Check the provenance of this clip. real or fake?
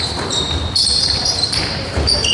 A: fake